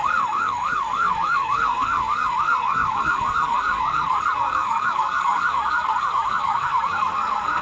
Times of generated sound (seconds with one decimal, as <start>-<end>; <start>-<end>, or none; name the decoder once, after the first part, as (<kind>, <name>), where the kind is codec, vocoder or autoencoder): 0.0-7.6 (codec, SNAC)